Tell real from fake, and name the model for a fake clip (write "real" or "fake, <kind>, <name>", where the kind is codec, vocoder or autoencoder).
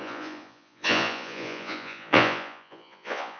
fake, vocoder, Vocos